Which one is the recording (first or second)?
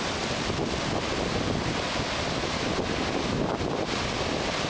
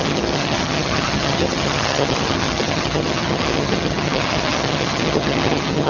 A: first